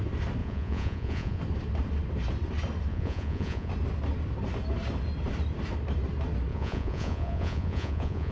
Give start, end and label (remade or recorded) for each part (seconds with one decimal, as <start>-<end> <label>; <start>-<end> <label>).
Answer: 0.0-0.4 recorded; 0.4-1.4 remade; 1.4-2.9 recorded; 2.9-3.7 remade; 3.7-6.5 recorded; 6.5-8.3 remade